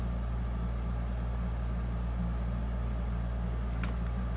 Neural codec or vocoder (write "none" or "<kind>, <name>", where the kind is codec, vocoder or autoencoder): none